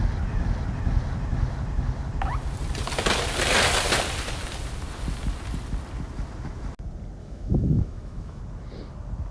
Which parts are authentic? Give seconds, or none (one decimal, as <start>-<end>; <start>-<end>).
0.0-7.2; 8.4-9.3